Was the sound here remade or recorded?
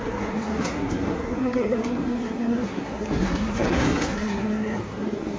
remade